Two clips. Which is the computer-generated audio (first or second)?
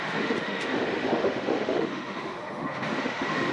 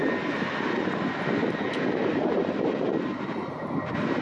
first